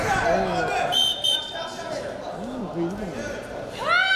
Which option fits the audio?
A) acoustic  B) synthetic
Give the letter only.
A